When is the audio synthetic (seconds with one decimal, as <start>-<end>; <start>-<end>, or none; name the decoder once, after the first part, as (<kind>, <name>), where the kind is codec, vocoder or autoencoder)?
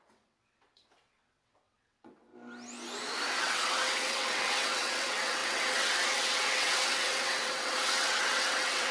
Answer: 0.0-2.3 (vocoder, WaveNeXt); 3.4-8.9